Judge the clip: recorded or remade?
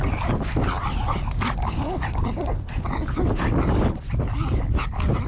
recorded